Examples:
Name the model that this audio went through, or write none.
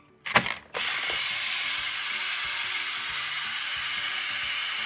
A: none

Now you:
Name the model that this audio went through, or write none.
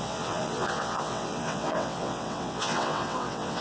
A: vocoder, WaveNeXt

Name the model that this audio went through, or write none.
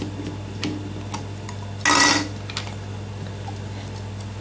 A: none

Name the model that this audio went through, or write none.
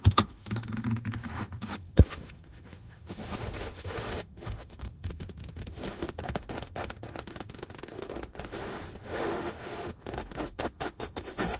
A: autoencoder, DAC-VAE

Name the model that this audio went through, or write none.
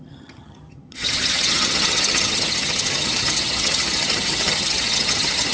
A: vocoder, HiFi-GAN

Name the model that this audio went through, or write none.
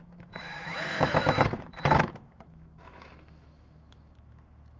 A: autoencoder, DAC-VAE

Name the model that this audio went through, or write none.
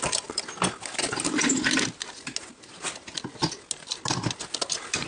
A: none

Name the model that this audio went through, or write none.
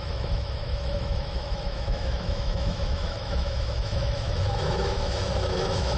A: autoencoder, DAC-VAE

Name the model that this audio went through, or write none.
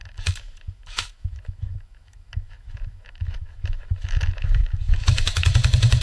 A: autoencoder, DAC-VAE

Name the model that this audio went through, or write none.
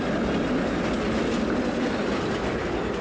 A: none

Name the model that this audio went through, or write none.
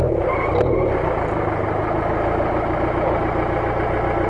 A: none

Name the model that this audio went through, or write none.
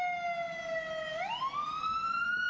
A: none